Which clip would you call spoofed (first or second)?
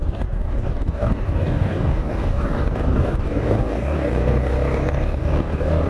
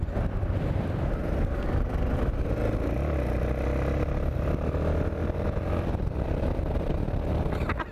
first